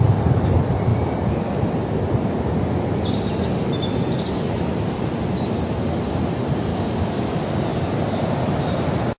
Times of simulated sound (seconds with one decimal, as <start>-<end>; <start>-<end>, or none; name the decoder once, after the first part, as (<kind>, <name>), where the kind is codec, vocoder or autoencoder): 6.7-7.3 (codec, DAC)